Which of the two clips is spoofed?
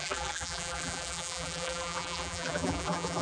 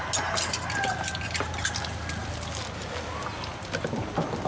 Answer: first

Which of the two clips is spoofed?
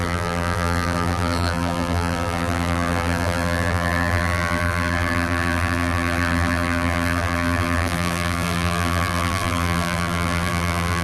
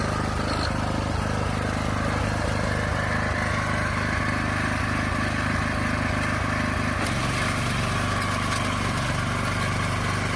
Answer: first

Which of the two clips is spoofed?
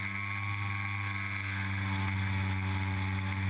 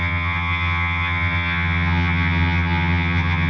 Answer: second